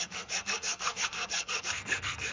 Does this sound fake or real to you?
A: fake